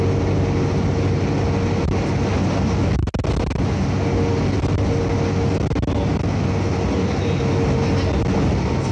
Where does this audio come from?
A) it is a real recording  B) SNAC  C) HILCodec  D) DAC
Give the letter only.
A